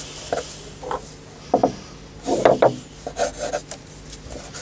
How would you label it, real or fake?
real